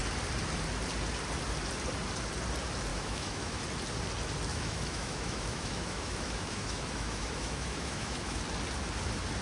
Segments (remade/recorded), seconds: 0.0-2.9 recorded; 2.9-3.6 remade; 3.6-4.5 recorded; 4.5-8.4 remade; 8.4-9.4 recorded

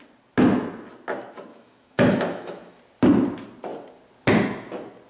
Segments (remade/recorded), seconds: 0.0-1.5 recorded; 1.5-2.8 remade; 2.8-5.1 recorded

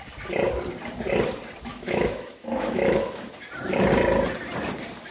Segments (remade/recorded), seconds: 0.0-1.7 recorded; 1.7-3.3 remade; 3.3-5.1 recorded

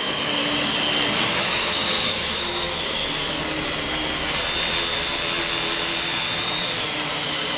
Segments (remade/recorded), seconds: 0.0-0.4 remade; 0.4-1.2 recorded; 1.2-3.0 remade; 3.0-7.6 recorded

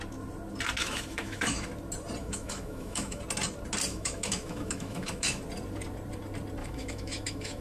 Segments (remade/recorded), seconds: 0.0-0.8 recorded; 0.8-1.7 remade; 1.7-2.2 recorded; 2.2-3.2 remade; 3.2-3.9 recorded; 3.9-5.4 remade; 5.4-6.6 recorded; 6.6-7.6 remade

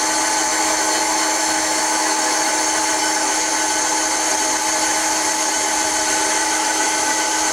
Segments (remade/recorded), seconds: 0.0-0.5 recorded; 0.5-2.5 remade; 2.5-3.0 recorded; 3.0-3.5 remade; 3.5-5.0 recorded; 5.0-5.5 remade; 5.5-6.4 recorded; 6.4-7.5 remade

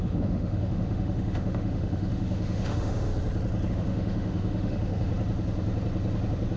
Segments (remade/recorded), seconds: 0.0-3.1 remade; 3.1-3.7 recorded; 3.7-5.1 remade; 5.1-6.6 recorded